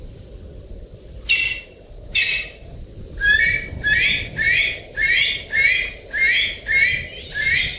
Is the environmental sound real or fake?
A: real